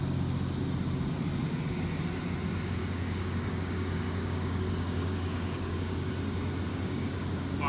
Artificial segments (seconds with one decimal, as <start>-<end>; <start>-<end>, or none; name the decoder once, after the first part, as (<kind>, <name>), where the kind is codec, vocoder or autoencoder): 2.8-6.1 (codec, DAC); 6.7-7.3